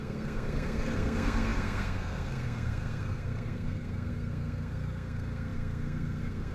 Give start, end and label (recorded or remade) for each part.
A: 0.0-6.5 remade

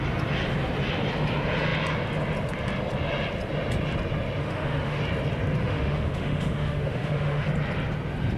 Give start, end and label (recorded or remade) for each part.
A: 0.0-4.4 recorded; 4.4-5.0 remade; 5.0-5.6 recorded; 5.6-7.5 remade; 7.5-8.4 recorded

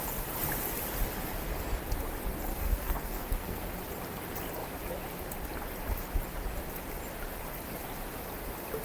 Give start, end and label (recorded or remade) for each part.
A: 0.0-2.5 recorded; 2.5-3.7 remade; 3.7-8.8 recorded

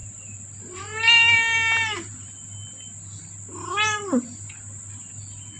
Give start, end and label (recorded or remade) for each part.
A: 0.0-0.8 remade; 0.8-3.5 recorded; 3.5-4.6 remade; 4.6-5.6 recorded

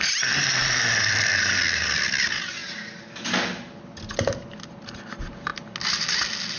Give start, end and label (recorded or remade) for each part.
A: 0.0-2.6 remade; 2.6-4.6 recorded; 4.6-5.5 remade; 5.5-6.6 recorded